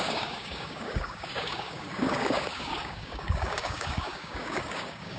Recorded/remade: remade